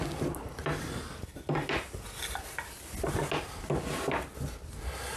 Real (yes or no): yes